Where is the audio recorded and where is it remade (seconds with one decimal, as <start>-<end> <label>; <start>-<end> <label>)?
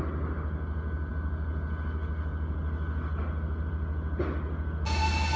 0.0-5.4 recorded